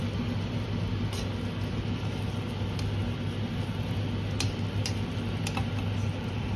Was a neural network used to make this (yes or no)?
no